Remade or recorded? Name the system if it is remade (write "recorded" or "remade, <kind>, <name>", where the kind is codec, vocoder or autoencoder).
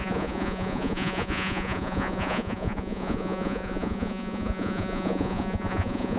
remade, vocoder, Vocos